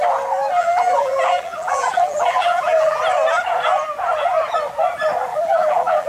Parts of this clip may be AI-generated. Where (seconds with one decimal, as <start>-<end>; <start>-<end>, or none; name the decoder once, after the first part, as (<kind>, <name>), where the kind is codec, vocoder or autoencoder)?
0.6-3.0 (vocoder, BigVGAN v2); 5.3-6.1